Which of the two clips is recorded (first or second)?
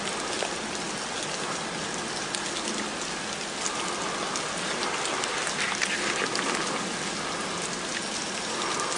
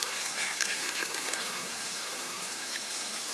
first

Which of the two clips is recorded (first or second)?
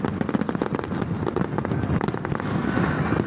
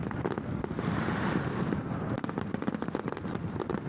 first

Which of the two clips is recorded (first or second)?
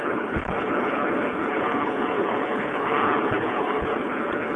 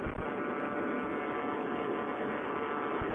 second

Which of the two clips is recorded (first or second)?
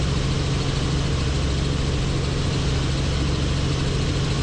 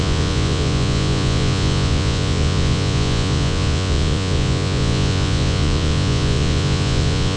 first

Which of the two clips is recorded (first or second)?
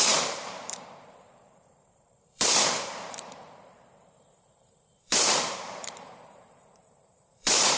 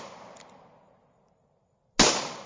second